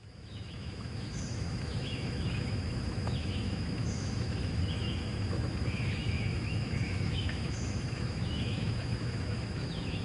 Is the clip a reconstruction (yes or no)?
yes